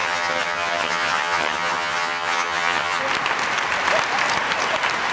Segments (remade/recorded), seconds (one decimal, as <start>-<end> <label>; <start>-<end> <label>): 0.0-3.0 remade; 3.0-5.1 recorded